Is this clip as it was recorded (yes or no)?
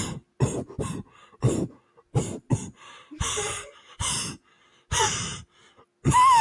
yes